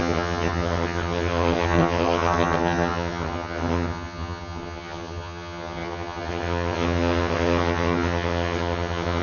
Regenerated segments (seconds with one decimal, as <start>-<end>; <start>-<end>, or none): 0.0-9.2